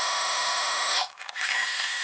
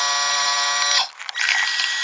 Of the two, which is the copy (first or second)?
first